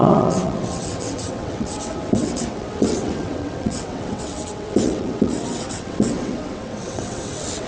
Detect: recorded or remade remade